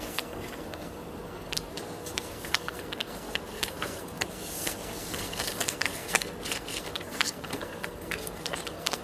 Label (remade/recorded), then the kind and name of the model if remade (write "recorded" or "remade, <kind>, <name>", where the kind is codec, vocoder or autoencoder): remade, codec, SNAC